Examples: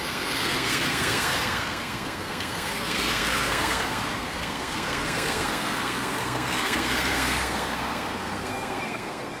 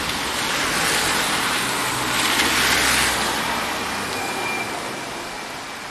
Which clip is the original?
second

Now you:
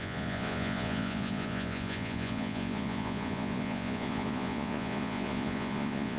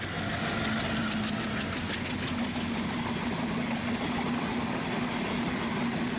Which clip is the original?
second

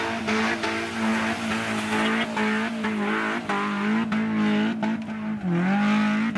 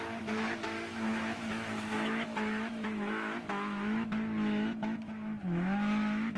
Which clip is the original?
first